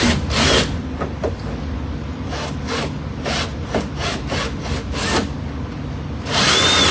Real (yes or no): yes